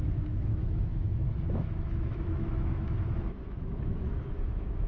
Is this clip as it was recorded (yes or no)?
no